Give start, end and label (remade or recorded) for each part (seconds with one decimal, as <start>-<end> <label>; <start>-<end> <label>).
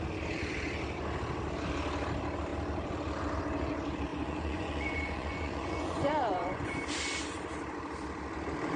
0.0-4.1 recorded; 4.1-6.8 remade; 6.8-8.8 recorded